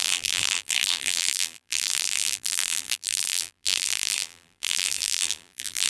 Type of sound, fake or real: fake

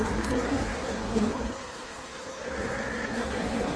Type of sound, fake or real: fake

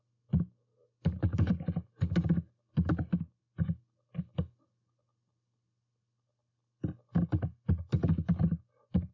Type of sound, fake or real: real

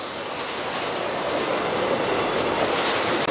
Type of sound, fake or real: real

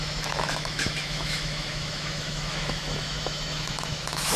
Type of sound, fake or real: fake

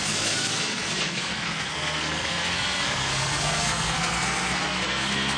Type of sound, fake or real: fake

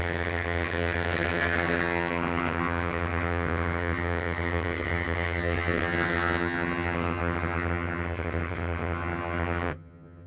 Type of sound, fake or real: fake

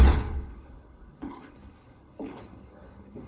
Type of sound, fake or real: fake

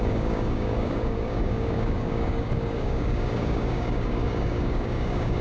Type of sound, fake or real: fake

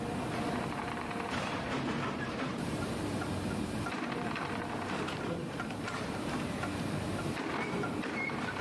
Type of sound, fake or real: fake